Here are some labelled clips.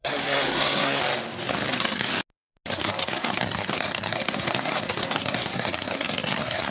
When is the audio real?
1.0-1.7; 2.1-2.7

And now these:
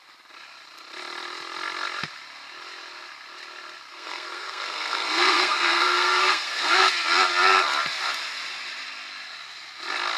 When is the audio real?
0.0-3.9; 6.9-10.2

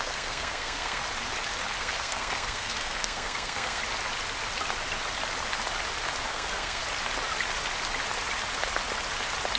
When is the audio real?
1.0-1.8; 3.8-6.3; 6.8-9.6

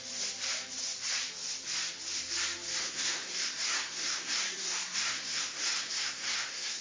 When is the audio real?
0.0-2.8

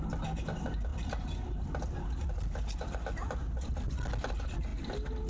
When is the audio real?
0.0-5.3

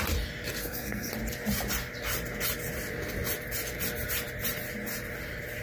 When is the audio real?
0.0-0.6; 1.1-5.6